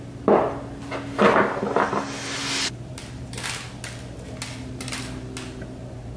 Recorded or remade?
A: recorded